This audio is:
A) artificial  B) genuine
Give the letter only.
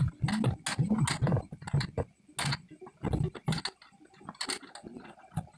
B